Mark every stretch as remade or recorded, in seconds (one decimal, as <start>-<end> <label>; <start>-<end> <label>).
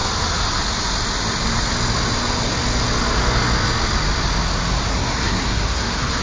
0.0-4.9 recorded; 4.9-6.2 remade